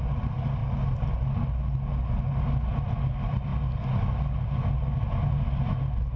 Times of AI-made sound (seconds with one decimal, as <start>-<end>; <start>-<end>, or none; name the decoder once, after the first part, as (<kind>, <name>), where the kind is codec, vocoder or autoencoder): none